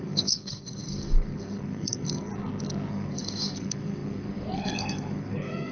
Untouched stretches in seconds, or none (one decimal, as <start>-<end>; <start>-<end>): 2.3-2.9